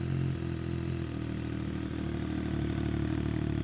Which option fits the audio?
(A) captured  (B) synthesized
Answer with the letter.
A